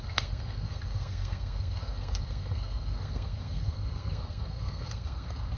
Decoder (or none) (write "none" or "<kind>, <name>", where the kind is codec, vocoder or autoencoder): codec, SNAC